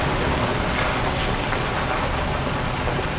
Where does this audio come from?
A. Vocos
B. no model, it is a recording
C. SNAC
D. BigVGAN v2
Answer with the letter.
B